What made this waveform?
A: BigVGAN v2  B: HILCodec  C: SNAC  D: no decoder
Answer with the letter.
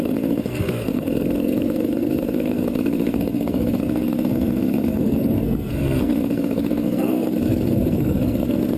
C